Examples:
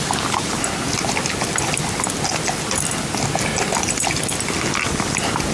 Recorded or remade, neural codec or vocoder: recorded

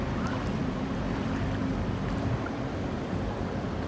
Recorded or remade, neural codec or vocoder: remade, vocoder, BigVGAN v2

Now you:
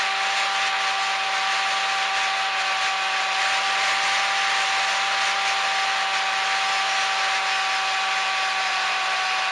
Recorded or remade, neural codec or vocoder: recorded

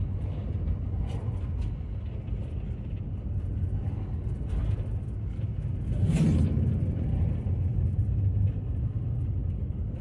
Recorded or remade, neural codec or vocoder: recorded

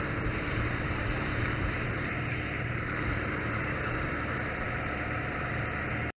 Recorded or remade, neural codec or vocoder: remade, vocoder, BigVGAN v2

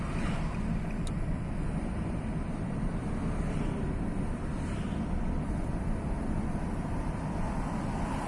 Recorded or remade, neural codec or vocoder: remade, vocoder, BigVGAN v2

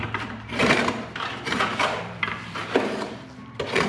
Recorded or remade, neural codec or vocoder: remade, vocoder, BigVGAN v2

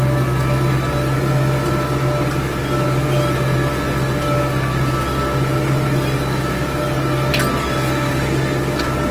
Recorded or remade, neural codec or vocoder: recorded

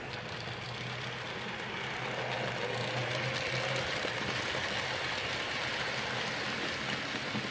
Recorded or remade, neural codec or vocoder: recorded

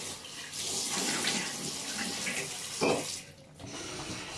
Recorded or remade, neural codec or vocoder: recorded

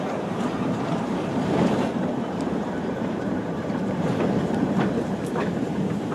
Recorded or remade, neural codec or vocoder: remade, vocoder, BigVGAN v2